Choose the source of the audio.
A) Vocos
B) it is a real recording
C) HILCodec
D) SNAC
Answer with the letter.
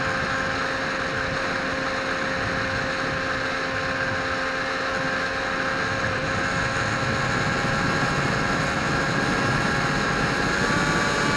B